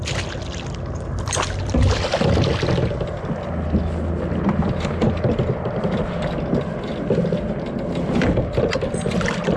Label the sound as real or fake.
real